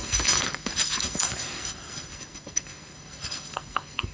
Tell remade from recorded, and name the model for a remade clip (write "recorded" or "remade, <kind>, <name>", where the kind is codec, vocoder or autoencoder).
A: remade, codec, SNAC